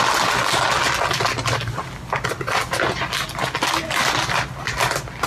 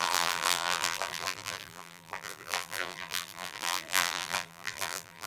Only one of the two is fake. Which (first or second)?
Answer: second